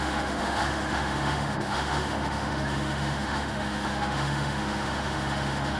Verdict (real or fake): fake